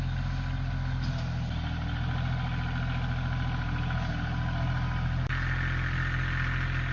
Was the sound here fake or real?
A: real